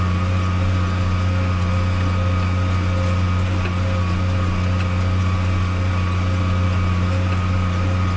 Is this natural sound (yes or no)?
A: yes